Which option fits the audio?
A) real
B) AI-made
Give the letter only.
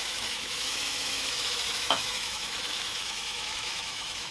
B